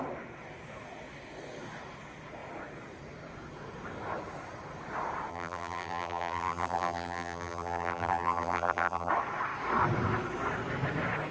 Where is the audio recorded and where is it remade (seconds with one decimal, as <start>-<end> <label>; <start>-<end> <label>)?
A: 0.0-5.3 recorded; 5.3-9.1 remade; 9.1-11.3 recorded